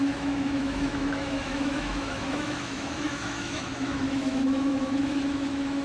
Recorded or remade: remade